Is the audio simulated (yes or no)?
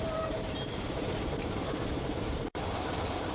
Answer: yes